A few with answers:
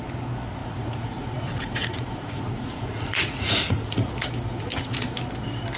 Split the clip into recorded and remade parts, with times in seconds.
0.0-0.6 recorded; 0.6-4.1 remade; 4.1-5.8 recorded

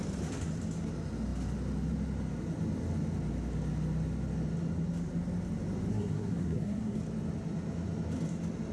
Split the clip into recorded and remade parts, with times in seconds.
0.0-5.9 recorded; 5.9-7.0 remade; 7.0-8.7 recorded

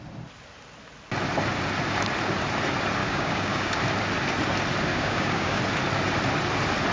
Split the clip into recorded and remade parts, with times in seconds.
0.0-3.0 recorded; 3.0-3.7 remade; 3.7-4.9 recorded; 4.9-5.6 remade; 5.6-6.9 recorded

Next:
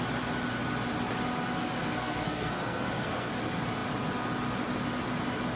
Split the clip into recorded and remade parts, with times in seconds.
0.0-1.8 recorded; 1.8-3.3 remade; 3.3-5.6 recorded

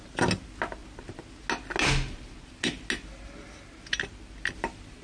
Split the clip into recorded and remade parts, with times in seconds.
0.0-5.0 recorded